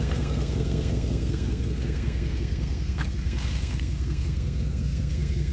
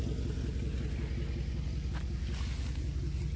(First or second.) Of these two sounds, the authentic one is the second